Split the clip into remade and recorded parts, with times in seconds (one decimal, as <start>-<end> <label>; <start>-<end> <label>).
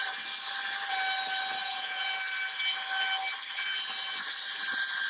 0.0-1.6 recorded; 1.6-2.1 remade; 2.1-5.1 recorded